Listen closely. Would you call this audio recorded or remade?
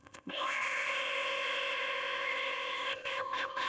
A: remade